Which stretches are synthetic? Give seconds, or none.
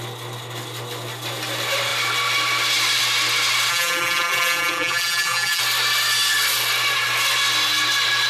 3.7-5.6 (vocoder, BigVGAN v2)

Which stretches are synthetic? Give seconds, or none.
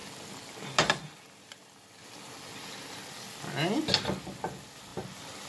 none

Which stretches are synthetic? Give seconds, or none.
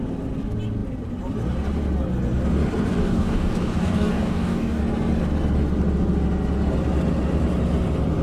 3.0-4.8 (codec, DAC)